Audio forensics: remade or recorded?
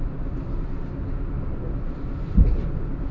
recorded